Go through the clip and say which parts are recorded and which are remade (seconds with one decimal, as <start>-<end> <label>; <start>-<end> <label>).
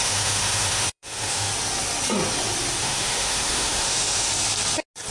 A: 0.0-1.5 remade; 1.5-2.8 recorded; 2.8-4.3 remade; 4.3-5.1 recorded